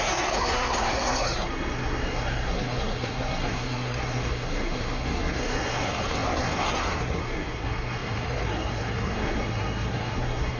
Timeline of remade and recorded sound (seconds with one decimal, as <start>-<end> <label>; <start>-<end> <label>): 0.0-10.6 remade